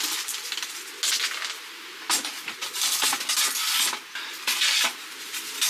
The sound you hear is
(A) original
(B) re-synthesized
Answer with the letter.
A